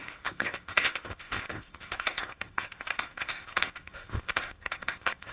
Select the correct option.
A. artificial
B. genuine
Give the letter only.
A